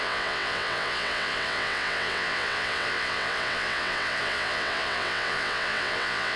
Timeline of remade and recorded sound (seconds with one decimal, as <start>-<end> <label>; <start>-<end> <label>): 0.0-6.4 remade